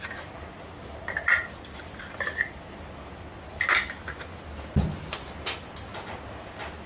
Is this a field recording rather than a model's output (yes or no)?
yes